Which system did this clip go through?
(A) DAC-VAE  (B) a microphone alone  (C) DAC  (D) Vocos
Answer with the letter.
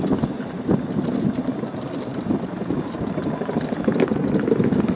B